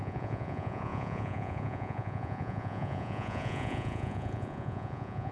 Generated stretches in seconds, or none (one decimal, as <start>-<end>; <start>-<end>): 0.0-5.3